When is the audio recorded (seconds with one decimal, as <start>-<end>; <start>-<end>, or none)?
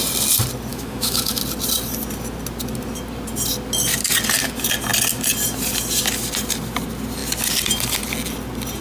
0.0-0.7; 1.4-8.8